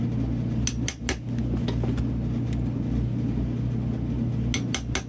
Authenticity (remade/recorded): recorded